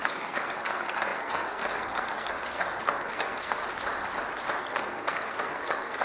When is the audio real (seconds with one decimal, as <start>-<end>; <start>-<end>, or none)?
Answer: 3.6-4.6